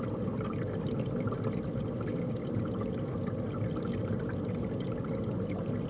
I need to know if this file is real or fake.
real